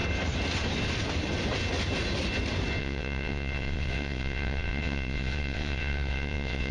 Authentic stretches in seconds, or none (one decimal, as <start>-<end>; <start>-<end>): 0.0-2.8

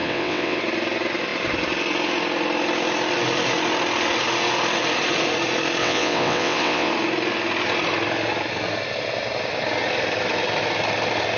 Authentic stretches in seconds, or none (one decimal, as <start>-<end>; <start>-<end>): 0.6-5.8; 6.9-11.4

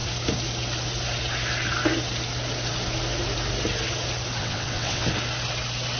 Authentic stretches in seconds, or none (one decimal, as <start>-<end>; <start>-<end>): 0.0-4.4; 5.1-6.0

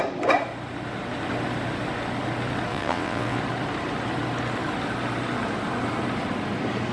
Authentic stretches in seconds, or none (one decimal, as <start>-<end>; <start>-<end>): 0.0-2.7; 3.4-6.9

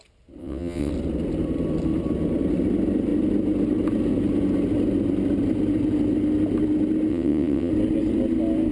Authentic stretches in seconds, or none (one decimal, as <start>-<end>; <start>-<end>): 0.0-0.4; 0.9-7.1; 7.7-8.7

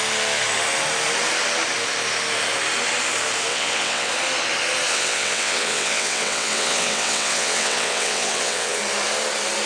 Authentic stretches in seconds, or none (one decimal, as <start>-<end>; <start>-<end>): 0.0-3.5; 4.1-4.9; 8.8-9.7

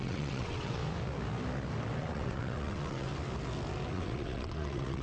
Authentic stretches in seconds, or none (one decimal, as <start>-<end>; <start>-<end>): 0.8-2.0; 3.1-3.9